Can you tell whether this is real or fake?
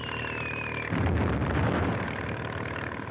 fake